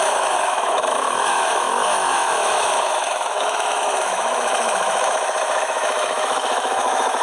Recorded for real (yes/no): no